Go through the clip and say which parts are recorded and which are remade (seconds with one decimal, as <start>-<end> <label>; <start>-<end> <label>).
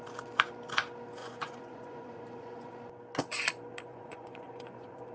0.0-1.2 recorded; 1.2-2.7 remade; 2.7-3.9 recorded; 3.9-5.1 remade